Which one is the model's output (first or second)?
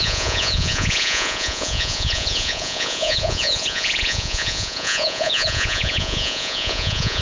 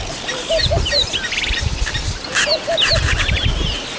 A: first